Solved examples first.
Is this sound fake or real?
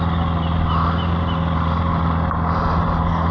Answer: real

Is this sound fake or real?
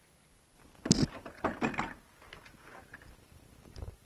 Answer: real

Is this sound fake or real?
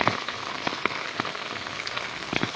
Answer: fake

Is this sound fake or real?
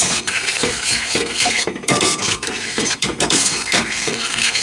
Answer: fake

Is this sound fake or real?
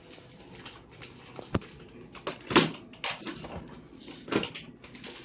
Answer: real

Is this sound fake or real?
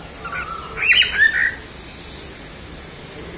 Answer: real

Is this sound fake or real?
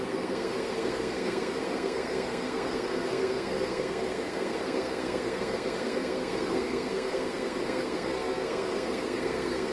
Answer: fake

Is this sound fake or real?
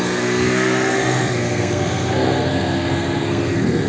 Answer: fake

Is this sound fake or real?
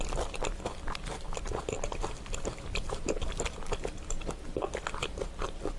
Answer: real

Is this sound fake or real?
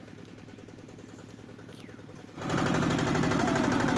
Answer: real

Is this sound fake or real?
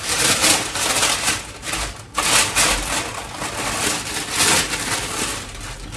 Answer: real